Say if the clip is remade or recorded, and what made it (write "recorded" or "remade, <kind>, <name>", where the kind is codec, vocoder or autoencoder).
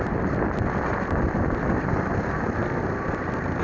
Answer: recorded